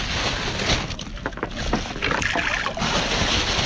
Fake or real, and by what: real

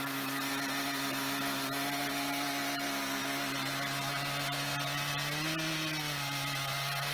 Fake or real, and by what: real